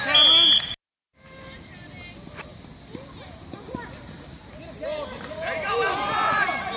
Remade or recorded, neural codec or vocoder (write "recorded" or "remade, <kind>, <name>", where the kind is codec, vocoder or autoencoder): recorded